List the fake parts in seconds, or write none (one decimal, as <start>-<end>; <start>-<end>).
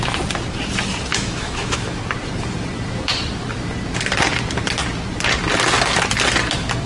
1.1-2.0